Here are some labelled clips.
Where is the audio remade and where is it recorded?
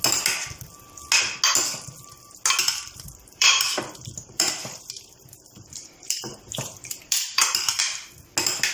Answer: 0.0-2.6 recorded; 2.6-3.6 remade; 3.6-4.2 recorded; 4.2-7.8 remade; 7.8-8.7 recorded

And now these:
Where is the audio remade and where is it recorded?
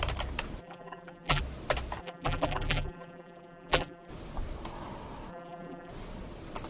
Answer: 0.0-0.6 recorded; 0.6-1.4 remade; 1.4-2.0 recorded; 2.0-4.1 remade; 4.1-5.3 recorded; 5.3-5.9 remade; 5.9-6.7 recorded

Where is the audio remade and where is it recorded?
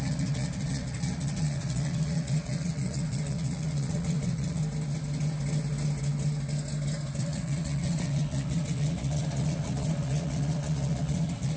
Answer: 0.0-4.6 remade; 4.6-7.2 recorded; 7.2-11.6 remade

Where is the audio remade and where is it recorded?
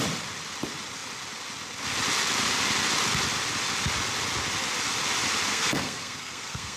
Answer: 0.0-5.5 recorded; 5.5-6.8 remade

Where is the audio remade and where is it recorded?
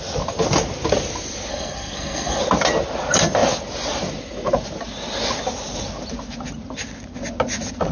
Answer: 0.0-1.5 recorded; 1.5-2.4 remade; 2.4-7.9 recorded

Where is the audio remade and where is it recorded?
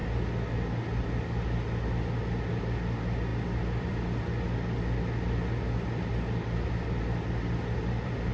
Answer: 0.0-3.3 recorded; 3.3-8.3 remade